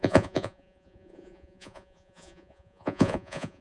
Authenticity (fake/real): fake